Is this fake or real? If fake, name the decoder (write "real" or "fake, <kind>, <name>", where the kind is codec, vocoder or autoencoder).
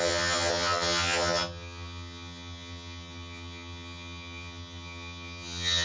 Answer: fake, vocoder, HiFi-GAN